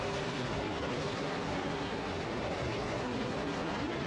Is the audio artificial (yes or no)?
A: yes